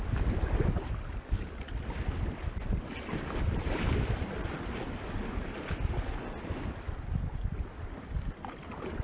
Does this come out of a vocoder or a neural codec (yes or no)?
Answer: no